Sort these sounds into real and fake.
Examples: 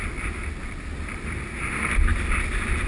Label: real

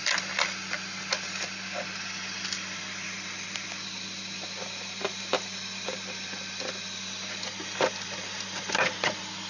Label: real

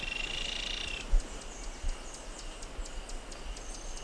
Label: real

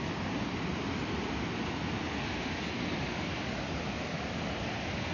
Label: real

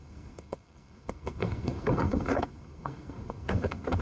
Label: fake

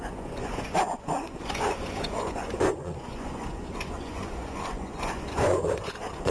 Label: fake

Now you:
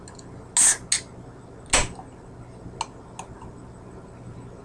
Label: real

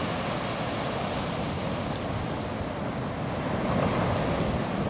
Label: real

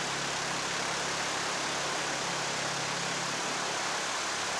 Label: real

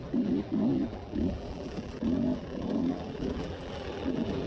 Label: fake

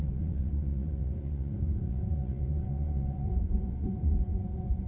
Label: fake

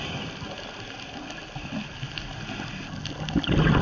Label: real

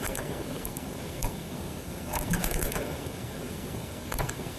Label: fake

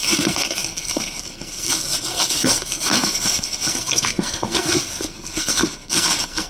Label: fake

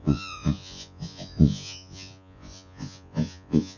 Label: fake